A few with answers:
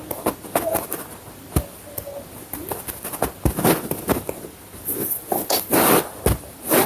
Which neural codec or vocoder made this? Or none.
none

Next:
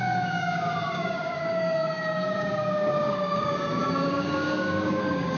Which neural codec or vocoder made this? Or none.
codec, DAC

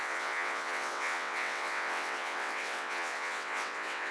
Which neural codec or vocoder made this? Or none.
vocoder, WaveNeXt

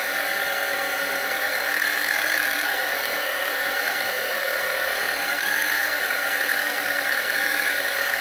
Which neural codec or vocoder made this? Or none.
codec, SNAC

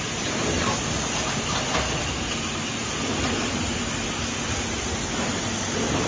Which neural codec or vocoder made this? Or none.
none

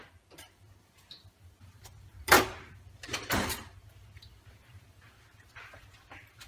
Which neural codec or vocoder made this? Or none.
vocoder, BigVGAN v2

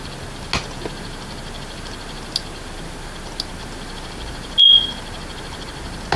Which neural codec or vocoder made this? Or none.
none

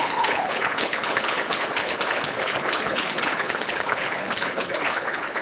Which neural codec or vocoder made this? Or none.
codec, HILCodec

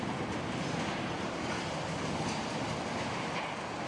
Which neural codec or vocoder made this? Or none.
none